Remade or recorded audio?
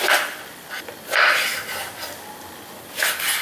recorded